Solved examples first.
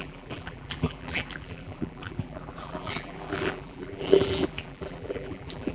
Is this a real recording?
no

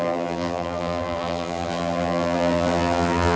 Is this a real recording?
no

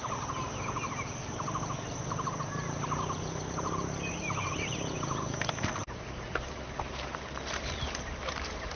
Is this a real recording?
no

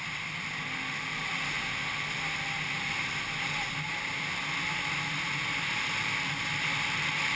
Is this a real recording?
yes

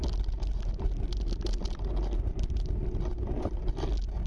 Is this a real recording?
yes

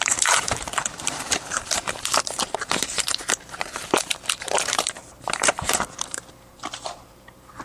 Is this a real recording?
no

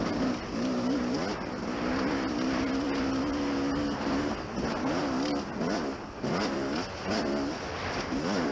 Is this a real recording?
yes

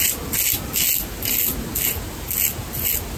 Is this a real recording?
yes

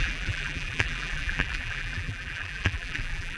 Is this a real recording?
no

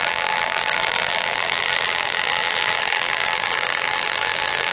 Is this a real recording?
no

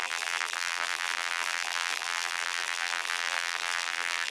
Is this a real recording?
no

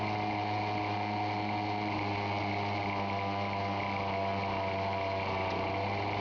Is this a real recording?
yes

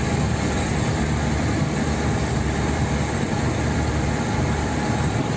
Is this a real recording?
no